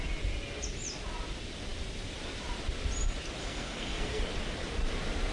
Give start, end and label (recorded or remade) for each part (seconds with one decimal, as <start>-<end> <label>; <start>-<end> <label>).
0.0-3.4 recorded; 3.4-4.2 remade; 4.2-5.3 recorded